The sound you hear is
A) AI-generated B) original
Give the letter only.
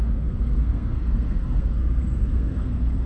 A